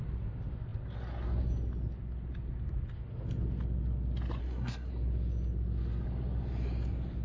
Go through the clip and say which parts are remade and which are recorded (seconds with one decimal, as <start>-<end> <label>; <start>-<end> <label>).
0.0-4.4 recorded; 4.4-4.9 remade; 4.9-7.2 recorded